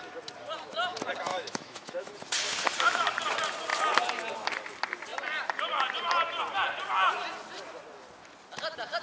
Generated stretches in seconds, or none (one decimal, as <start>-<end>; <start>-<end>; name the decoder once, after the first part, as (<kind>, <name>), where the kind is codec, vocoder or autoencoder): 1.3-2.1 (autoencoder, DAC-VAE)